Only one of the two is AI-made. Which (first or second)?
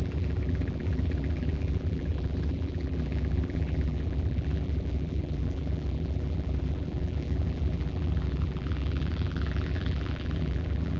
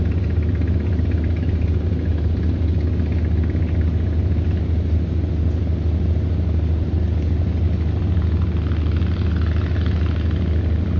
first